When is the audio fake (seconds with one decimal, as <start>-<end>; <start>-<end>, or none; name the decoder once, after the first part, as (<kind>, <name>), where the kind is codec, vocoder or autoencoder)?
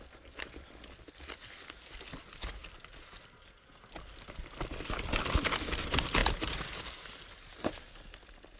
none